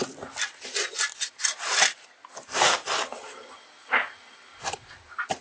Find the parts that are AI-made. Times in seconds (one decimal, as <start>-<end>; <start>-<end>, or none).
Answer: 0.0-0.7